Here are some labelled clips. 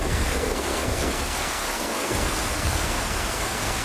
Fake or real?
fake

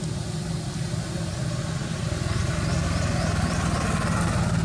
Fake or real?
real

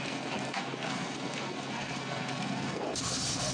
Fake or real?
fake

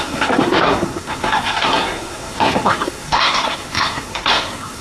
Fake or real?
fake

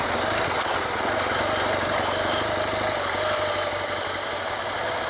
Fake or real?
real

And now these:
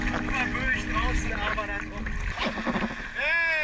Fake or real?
real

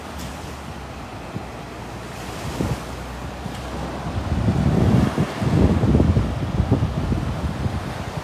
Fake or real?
real